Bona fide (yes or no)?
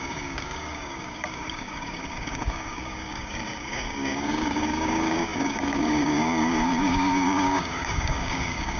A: no